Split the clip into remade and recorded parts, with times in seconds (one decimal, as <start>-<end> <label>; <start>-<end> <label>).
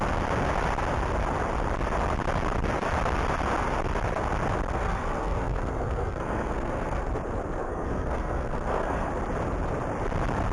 0.0-4.7 recorded; 4.7-7.1 remade; 7.1-7.6 recorded; 7.6-9.1 remade; 9.1-10.5 recorded